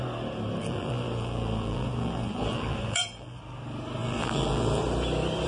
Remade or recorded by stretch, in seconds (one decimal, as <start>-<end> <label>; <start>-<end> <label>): 0.0-0.6 recorded; 0.6-3.4 remade; 3.4-4.0 recorded; 4.0-4.8 remade; 4.8-5.5 recorded